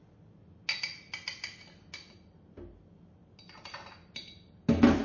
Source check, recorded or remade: recorded